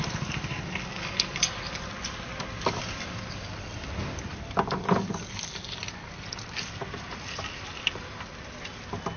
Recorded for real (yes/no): yes